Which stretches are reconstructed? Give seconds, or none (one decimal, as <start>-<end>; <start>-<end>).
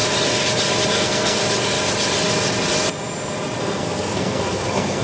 0.9-1.4; 3.6-5.0